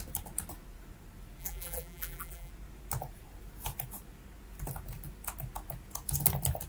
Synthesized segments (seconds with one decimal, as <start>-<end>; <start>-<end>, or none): 1.4-2.5